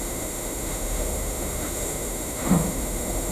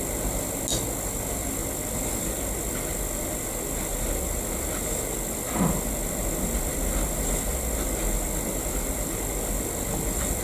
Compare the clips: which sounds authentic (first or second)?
second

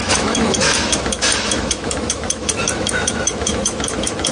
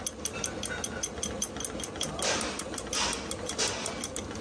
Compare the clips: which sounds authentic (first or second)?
second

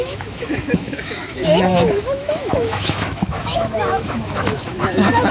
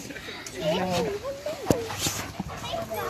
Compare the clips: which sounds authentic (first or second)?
second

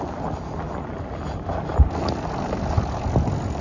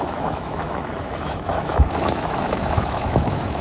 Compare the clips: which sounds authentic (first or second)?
first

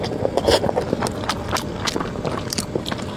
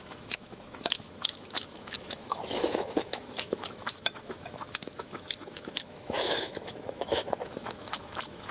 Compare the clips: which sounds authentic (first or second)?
first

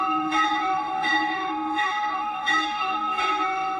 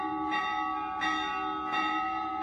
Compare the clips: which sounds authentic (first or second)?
second